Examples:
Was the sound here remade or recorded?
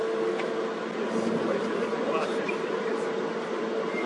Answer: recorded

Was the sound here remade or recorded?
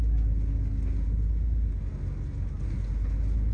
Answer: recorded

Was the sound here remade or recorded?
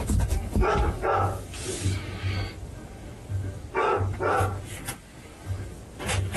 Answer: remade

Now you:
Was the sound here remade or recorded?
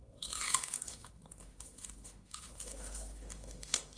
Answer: remade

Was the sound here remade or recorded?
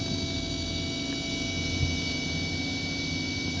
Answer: recorded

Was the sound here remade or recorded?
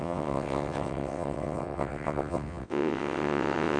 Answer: remade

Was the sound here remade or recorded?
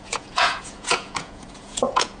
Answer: remade